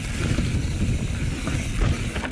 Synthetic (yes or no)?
no